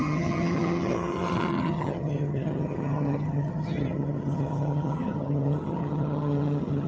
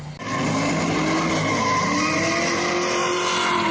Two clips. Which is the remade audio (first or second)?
first